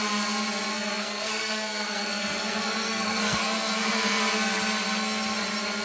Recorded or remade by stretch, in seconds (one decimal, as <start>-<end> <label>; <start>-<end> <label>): 0.0-0.7 recorded; 0.7-4.2 remade; 4.2-5.8 recorded